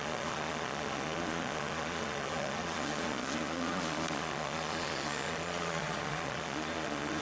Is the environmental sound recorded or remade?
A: remade